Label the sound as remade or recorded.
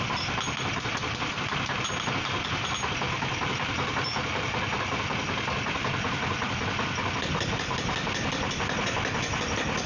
recorded